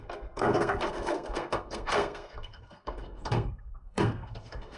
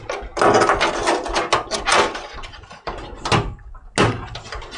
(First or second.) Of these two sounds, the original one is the second